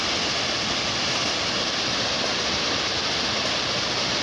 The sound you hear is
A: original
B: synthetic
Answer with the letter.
A